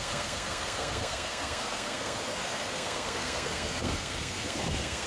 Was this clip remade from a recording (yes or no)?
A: yes